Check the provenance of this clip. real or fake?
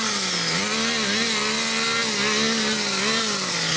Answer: real